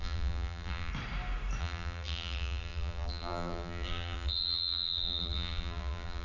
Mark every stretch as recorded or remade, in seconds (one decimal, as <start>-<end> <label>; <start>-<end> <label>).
0.0-0.9 remade; 0.9-1.6 recorded; 1.6-6.2 remade